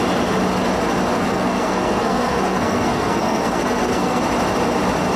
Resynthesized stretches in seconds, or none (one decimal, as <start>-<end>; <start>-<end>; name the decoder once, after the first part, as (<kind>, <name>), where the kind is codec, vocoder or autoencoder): 1.1-4.2 (codec, SNAC)